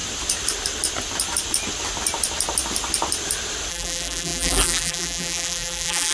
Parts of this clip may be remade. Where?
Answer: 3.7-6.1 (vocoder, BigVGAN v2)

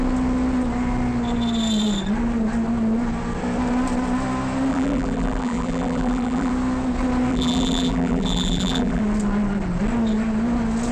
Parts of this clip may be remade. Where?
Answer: 4.7-6.5 (vocoder, BigVGAN v2); 7.3-9.0